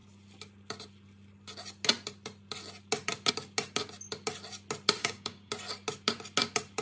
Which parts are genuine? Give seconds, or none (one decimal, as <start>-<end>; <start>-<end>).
0.0-5.0; 5.5-6.8